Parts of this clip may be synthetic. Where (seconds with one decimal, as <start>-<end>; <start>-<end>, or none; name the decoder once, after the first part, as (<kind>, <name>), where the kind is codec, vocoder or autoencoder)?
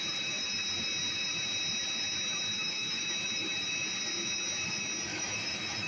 2.5-3.1 (autoencoder, DAC-VAE); 5.1-5.9